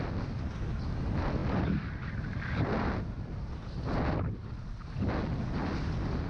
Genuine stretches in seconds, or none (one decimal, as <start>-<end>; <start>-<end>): 0.0-6.3